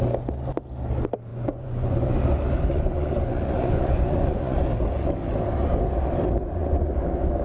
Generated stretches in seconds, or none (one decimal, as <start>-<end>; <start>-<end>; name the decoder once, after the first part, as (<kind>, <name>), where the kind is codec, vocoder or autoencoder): 1.3-2.2 (vocoder, Vocos); 2.7-4.6; 6.4-6.9

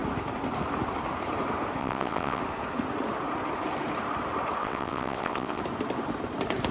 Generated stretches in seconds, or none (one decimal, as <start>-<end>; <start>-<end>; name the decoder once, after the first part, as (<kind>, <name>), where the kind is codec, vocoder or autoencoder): 1.8-2.4 (vocoder, WaveNeXt); 4.6-5.6

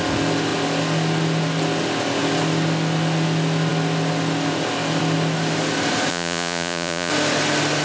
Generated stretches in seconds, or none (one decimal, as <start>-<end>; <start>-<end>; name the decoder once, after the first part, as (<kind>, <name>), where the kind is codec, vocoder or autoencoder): 6.1-7.1 (vocoder, Vocos)

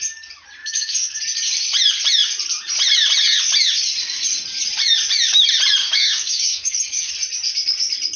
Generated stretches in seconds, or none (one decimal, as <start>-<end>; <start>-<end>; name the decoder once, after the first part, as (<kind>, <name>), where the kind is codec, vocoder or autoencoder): 0.6-1.2 (autoencoder, DAC-VAE); 5.8-7.1

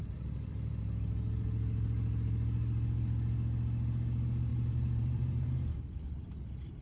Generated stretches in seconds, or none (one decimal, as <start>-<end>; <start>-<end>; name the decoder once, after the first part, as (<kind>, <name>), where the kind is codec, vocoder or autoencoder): 0.0-0.8 (vocoder, BigVGAN v2); 4.5-6.2